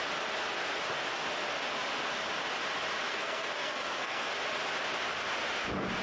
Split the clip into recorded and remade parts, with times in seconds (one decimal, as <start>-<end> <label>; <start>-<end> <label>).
0.0-3.1 recorded; 3.1-4.3 remade; 4.3-6.0 recorded

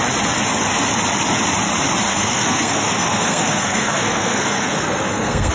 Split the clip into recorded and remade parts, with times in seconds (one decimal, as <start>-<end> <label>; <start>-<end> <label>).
0.0-2.1 recorded; 2.1-5.5 remade

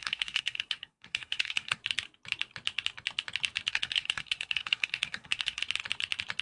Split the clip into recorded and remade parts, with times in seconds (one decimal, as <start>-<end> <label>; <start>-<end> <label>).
0.0-1.8 remade; 1.8-3.7 recorded; 3.7-5.6 remade; 5.6-6.4 recorded